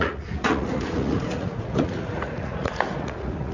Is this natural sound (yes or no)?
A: no